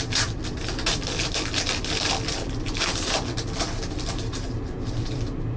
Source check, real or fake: fake